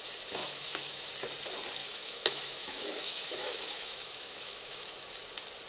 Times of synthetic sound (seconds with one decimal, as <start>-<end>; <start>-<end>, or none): 0.4-1.1; 1.8-4.9